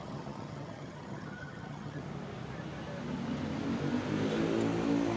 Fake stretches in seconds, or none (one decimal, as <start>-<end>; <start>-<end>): 0.0-2.0